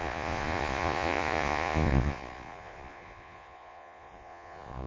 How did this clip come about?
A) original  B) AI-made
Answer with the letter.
B